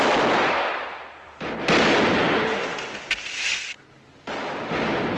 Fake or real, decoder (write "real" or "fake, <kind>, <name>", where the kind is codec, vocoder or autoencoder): real